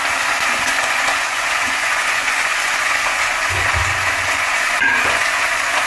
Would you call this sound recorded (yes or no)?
no